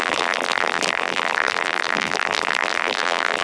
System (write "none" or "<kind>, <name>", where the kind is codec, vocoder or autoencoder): vocoder, BigVGAN v2